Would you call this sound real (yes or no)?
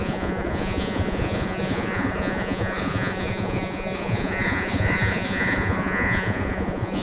no